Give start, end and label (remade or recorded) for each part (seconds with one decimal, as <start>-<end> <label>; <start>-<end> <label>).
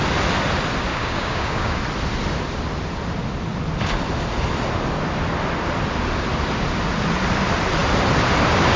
0.0-0.9 recorded; 0.9-1.8 remade; 1.8-8.8 recorded